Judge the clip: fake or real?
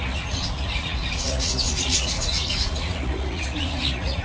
fake